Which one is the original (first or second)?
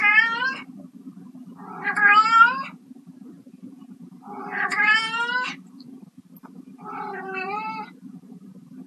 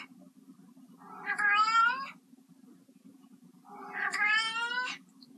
second